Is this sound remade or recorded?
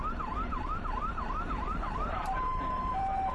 remade